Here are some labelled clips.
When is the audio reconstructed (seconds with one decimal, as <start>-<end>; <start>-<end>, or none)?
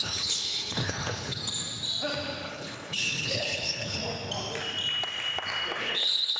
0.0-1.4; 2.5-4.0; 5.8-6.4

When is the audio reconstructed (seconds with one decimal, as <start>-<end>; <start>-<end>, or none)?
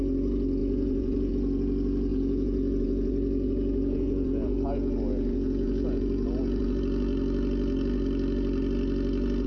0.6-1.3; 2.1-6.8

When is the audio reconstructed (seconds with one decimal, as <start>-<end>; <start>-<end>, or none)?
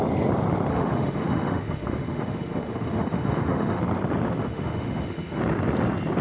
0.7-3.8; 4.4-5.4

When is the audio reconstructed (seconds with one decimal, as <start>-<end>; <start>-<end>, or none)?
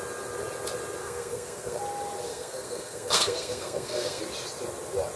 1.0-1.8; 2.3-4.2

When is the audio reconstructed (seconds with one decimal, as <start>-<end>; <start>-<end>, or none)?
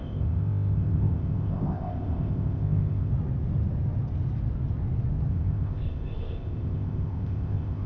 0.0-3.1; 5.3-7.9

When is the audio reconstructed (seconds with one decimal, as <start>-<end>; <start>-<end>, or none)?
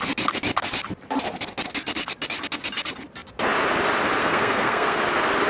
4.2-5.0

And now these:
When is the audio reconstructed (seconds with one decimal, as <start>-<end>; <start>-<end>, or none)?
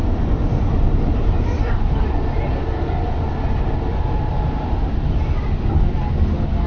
0.0-2.5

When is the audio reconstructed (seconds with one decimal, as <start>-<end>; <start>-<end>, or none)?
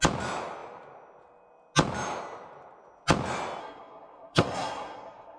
3.6-5.4